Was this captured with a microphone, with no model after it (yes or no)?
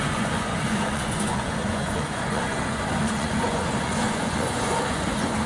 no